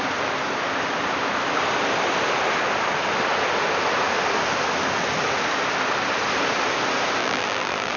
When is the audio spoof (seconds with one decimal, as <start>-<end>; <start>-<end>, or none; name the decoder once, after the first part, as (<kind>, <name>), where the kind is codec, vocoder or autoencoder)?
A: 7.2-8.0 (vocoder, BigVGAN v2)